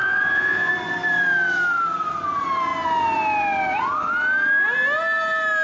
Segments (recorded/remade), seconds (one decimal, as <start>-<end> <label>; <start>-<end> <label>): 0.0-0.7 remade; 0.7-5.6 recorded